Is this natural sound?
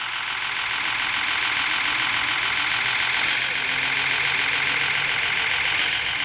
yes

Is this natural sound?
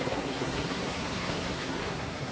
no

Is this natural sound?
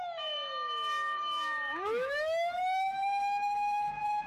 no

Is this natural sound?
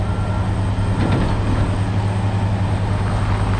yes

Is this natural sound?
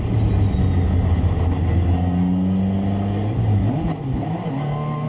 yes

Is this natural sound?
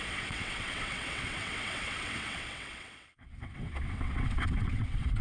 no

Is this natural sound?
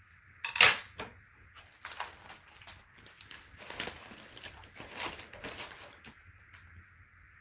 yes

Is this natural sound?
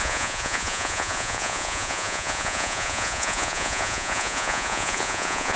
no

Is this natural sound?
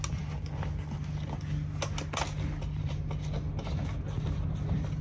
yes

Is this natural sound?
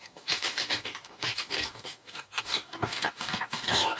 no